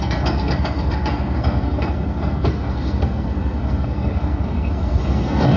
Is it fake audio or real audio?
fake